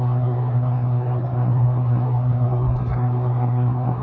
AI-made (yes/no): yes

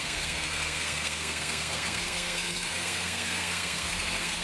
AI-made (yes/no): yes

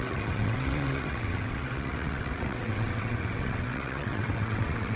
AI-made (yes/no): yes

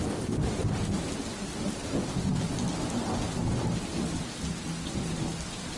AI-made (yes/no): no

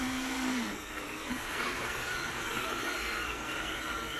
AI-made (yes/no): yes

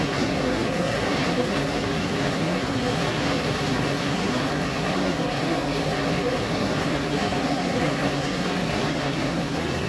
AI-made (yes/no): yes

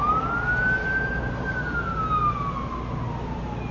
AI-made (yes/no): no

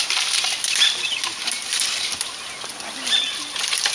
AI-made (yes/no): no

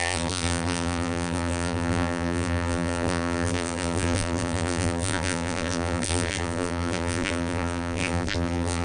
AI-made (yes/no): yes